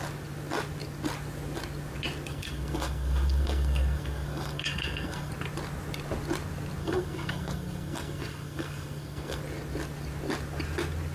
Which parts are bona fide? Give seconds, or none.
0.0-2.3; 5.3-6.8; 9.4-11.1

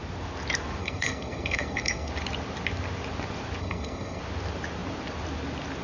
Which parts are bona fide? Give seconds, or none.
0.0-0.8; 2.1-3.6; 4.2-5.8

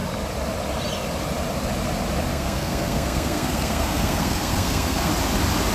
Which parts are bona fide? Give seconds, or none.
0.0-2.3; 5.1-5.7

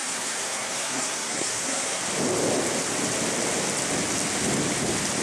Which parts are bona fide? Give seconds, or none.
2.0-5.2